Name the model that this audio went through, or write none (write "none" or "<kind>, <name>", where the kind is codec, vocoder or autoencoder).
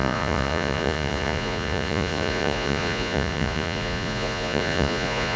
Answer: vocoder, Vocos